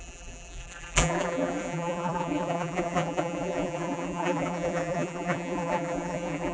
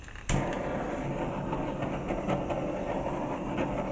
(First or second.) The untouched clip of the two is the second